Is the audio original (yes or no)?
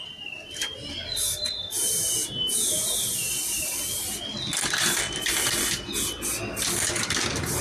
yes